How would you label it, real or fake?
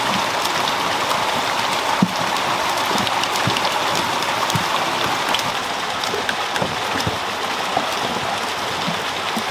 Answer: real